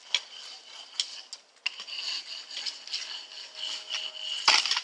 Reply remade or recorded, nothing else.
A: recorded